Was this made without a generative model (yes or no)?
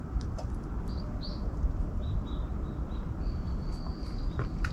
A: yes